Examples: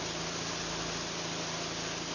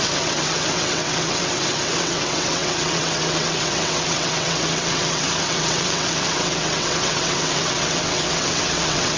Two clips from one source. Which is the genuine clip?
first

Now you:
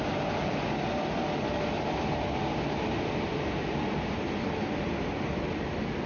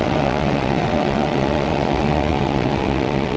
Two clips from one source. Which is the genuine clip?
first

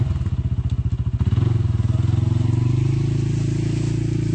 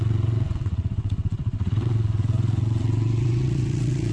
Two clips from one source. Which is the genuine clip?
first